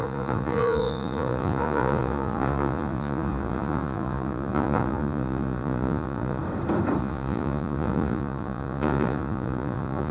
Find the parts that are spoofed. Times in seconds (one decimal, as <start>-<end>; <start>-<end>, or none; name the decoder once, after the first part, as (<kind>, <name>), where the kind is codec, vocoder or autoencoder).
0.0-6.4 (vocoder, Vocos); 7.0-10.1